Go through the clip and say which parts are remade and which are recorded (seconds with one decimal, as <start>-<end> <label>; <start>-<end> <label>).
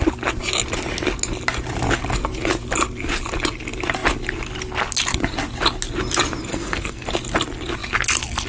0.0-6.5 recorded; 6.5-7.1 remade; 7.1-8.5 recorded